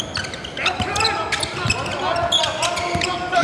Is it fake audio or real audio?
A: real